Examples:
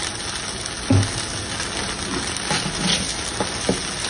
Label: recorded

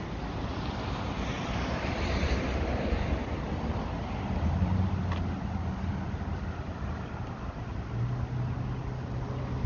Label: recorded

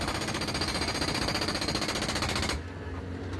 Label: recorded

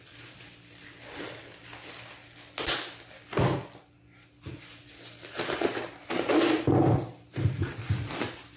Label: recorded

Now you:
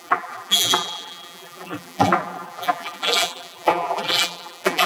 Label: remade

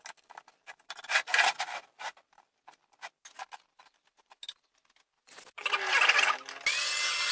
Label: recorded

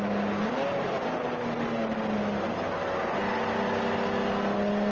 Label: recorded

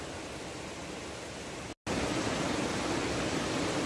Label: recorded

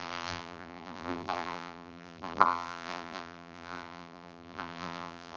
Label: remade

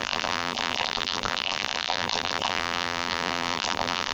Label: remade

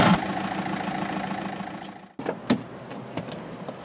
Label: recorded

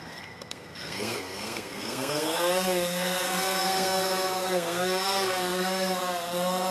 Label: remade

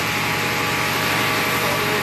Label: recorded